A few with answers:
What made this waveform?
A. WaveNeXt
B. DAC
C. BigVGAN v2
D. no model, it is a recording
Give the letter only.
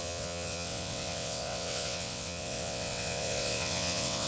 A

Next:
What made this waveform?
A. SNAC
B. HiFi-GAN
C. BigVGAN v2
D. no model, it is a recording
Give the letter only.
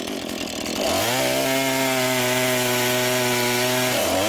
D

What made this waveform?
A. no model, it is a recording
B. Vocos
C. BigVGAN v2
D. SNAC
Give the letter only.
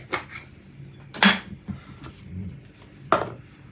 A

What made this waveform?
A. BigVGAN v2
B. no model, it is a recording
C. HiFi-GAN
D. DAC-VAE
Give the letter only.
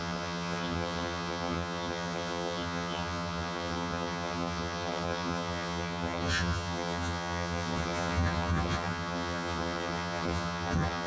C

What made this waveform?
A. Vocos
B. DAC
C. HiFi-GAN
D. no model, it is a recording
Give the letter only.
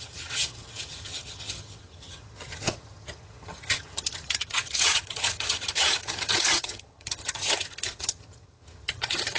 C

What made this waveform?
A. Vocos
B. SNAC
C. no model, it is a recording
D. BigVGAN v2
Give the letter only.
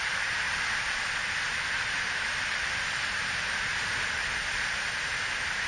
C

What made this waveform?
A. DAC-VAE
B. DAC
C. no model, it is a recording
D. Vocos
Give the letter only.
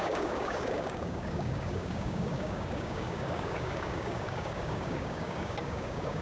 B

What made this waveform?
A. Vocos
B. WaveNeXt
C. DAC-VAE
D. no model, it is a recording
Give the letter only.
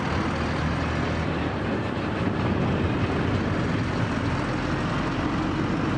D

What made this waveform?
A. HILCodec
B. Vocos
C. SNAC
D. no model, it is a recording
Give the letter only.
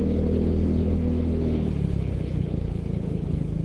A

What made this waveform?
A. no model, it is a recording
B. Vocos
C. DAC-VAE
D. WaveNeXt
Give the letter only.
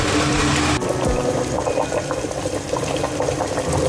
A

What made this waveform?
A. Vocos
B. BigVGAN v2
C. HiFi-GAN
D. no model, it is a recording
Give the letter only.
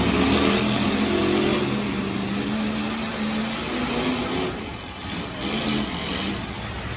D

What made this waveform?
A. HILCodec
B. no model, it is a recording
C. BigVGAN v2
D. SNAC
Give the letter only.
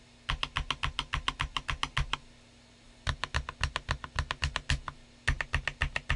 B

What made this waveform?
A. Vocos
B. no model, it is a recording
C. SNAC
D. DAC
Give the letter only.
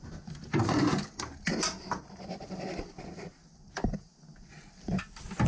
B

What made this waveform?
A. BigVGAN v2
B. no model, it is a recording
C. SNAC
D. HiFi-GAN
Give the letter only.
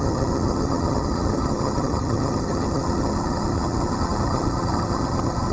D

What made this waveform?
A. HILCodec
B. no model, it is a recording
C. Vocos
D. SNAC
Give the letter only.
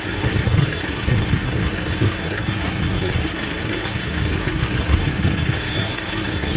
D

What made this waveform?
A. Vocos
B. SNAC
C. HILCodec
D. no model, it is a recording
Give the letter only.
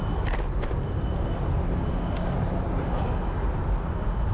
D